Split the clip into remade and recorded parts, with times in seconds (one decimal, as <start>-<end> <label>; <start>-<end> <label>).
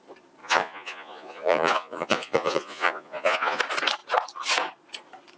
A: 0.0-0.4 recorded; 0.4-3.6 remade; 3.6-5.4 recorded